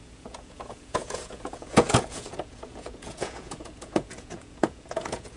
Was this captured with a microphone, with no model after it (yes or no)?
no